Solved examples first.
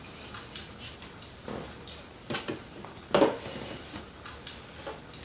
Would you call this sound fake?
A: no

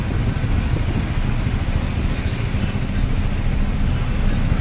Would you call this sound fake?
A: no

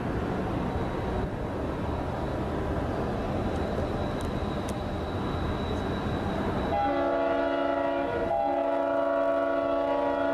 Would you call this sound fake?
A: no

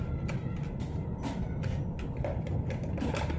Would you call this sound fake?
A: no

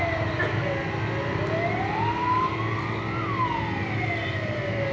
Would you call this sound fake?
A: no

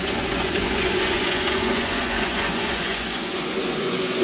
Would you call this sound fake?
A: yes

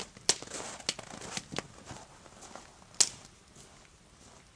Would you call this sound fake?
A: no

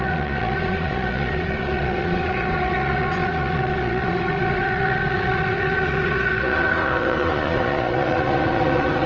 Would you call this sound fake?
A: yes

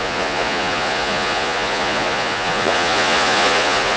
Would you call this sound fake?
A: yes